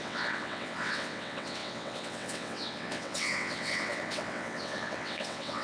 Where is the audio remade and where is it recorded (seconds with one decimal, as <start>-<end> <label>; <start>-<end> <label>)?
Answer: 0.0-5.6 remade